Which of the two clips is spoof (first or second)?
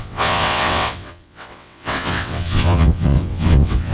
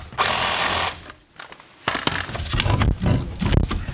first